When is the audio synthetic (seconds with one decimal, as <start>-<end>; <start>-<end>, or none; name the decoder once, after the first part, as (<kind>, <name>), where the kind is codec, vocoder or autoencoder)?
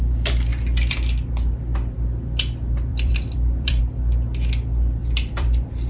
2.9-3.8 (vocoder, BigVGAN v2); 5.0-5.9